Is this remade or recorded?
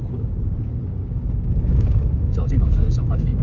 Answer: remade